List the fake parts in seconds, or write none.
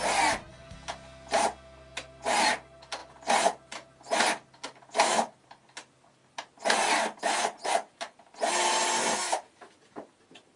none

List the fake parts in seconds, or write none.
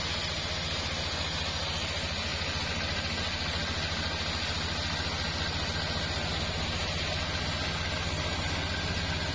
none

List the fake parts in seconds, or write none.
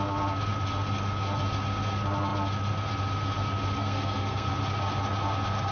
3.8-4.5 (codec, SNAC)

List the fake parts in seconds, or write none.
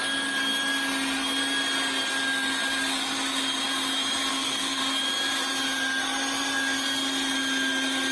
4.3-4.8 (codec, SNAC)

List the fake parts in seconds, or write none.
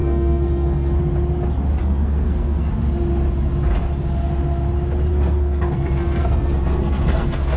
0.0-1.0 (codec, SNAC); 1.8-2.7; 5.1-7.6